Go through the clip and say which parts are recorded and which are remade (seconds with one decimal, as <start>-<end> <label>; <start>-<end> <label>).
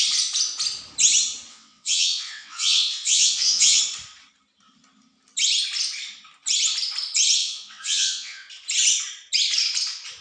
0.0-1.5 recorded; 1.5-3.8 remade; 3.8-7.4 recorded; 7.4-8.5 remade; 8.5-10.2 recorded